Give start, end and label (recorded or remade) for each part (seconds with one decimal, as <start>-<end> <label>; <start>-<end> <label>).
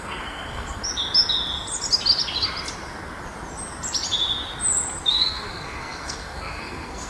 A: 0.0-0.8 remade; 0.8-5.1 recorded; 5.1-7.1 remade